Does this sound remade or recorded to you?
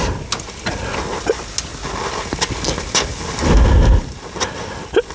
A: recorded